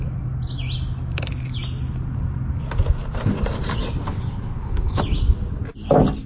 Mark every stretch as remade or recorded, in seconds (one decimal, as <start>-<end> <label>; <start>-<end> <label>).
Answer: 0.0-4.1 recorded; 4.1-5.0 remade; 5.0-6.3 recorded